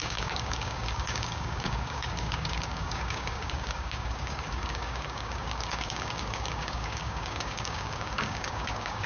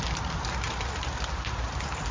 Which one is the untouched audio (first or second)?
second